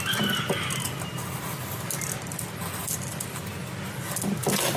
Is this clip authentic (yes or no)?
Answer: yes